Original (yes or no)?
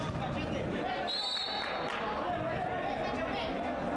yes